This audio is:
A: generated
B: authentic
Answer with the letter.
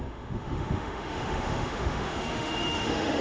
A